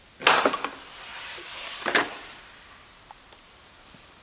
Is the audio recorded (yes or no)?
yes